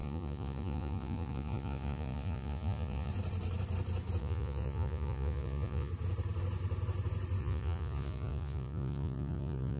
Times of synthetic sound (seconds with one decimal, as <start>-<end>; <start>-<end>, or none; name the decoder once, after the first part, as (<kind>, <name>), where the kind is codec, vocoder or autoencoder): 0.0-3.1 (vocoder, Vocos); 4.2-5.9; 7.4-9.8